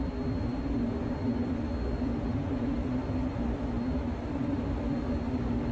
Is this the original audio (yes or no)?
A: yes